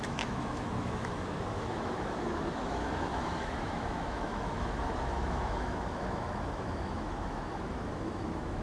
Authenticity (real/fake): fake